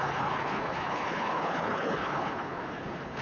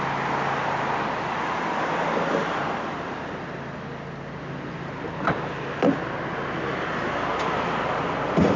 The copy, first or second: first